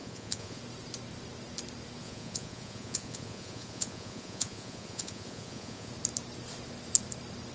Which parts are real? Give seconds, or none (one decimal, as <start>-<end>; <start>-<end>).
0.6-2.0; 5.9-7.5